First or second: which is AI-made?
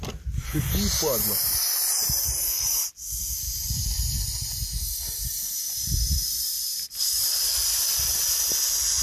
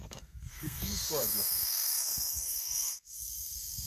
second